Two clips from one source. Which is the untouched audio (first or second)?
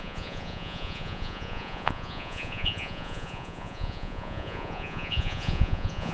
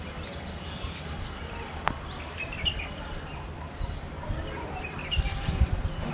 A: second